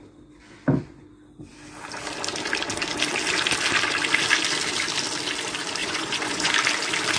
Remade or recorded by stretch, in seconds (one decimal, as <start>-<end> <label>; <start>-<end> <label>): 0.0-5.8 recorded; 5.8-6.5 remade; 6.5-7.2 recorded